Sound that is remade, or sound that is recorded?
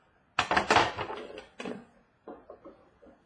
recorded